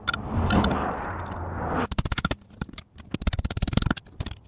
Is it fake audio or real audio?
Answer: real